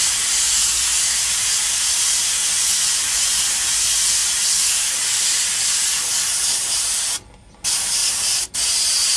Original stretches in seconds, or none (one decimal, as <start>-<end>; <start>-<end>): 0.0-2.4; 3.4-9.2